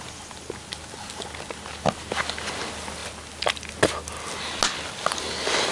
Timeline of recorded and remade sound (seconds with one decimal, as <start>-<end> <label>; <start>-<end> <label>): 0.0-5.7 recorded